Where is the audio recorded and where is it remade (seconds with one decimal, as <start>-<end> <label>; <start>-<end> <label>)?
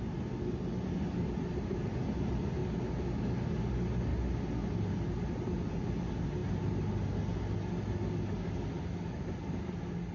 0.0-10.1 recorded